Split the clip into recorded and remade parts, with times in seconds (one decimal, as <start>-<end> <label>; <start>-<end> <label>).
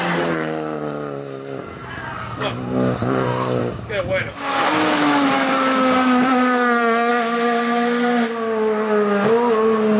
0.0-4.2 recorded; 4.2-7.1 remade; 7.1-10.0 recorded